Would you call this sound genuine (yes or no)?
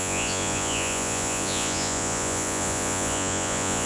no